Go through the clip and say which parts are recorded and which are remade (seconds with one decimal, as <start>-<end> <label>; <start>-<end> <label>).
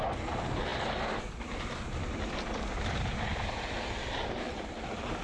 0.0-5.2 recorded